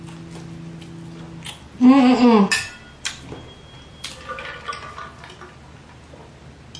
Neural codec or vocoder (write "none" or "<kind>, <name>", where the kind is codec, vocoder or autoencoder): none